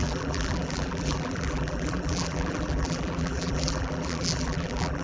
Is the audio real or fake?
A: fake